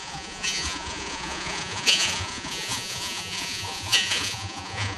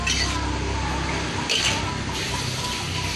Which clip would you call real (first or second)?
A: second